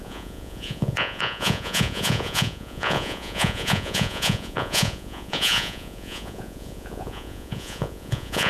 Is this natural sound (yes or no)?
no